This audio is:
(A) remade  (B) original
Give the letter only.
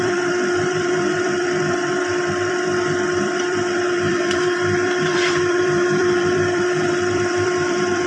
A